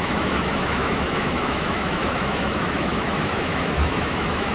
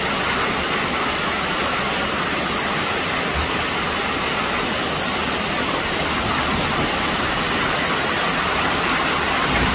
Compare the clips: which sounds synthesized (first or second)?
first